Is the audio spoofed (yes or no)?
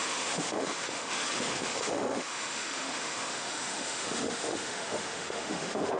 yes